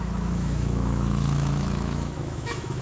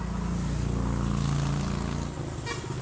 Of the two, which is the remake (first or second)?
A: first